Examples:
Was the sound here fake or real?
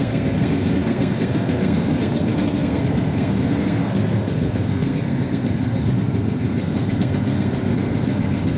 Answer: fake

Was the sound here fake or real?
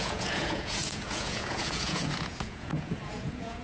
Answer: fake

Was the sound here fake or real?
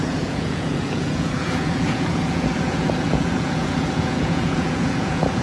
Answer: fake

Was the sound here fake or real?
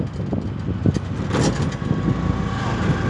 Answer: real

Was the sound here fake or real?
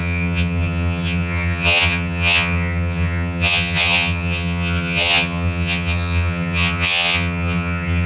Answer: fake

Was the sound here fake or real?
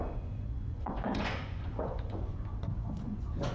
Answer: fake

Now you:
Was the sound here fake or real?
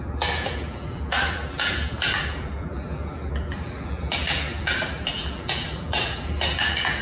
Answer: fake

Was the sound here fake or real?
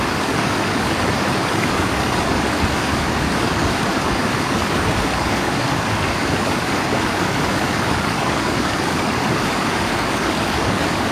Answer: fake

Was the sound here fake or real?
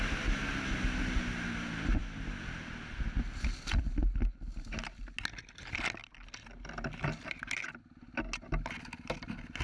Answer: real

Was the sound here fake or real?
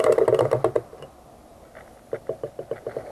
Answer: real